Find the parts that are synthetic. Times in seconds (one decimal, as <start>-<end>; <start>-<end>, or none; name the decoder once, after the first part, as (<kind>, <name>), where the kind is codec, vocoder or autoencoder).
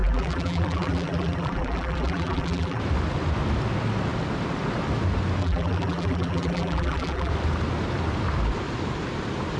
0.0-2.8 (vocoder, BigVGAN v2); 5.4-7.3